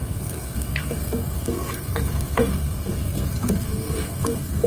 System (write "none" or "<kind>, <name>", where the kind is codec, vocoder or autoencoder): codec, SNAC